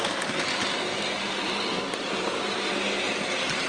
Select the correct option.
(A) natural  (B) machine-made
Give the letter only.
A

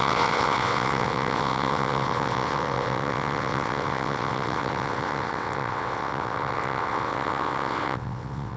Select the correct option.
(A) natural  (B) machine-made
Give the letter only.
B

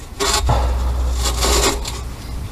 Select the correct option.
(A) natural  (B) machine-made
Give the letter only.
A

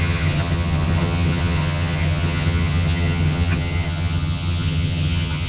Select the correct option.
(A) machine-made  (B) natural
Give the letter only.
A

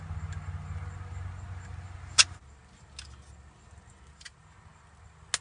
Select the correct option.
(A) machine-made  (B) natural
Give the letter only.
B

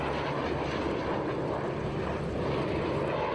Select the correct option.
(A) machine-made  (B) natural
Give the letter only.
B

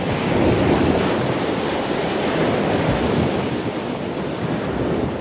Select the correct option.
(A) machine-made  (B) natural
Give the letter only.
B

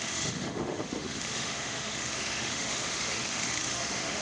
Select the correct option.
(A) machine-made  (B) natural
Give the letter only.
A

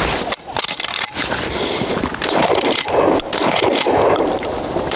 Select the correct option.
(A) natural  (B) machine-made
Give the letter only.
B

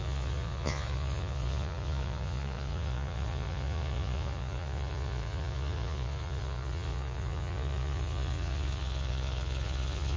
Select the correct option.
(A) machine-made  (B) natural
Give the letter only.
A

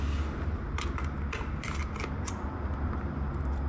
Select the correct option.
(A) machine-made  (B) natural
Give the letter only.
B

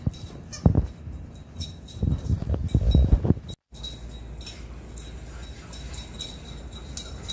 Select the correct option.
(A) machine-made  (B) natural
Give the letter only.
B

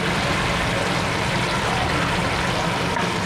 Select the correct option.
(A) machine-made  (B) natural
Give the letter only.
B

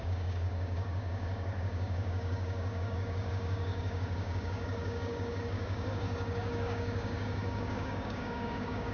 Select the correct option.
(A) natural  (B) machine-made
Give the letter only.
B